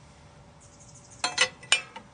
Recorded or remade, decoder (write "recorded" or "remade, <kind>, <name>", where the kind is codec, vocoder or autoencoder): recorded